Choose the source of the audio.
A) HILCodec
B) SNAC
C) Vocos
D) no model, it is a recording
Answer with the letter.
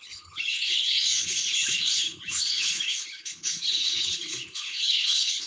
A